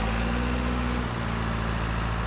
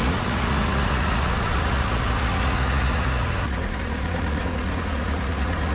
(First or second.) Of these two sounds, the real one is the first